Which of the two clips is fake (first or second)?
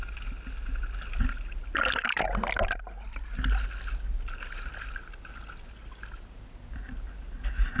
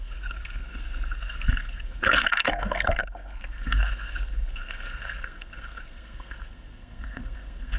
second